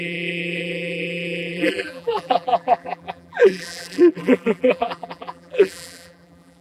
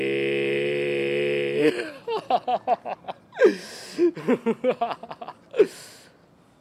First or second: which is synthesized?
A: first